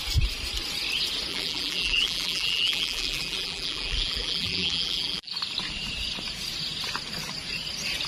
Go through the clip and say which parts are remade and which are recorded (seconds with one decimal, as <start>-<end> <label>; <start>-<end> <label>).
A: 0.0-1.3 recorded; 1.3-5.3 remade; 5.3-8.1 recorded